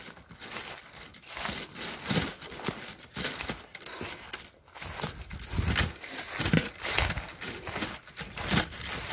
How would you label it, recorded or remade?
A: recorded